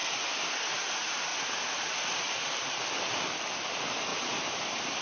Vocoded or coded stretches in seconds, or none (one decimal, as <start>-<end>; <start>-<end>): 0.6-1.3; 3.5-5.0